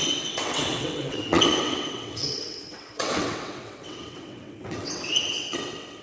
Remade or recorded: remade